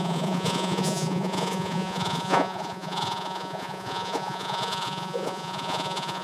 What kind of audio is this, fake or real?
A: fake